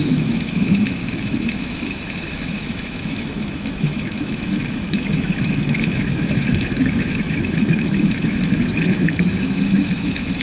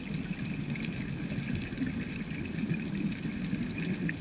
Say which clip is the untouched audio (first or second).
second